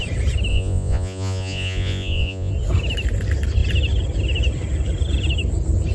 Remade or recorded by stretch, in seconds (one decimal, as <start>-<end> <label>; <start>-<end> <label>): 0.0-0.5 recorded; 0.5-2.5 remade; 2.5-5.9 recorded